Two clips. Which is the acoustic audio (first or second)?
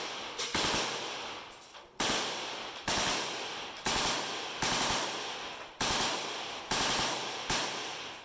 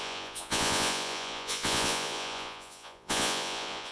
first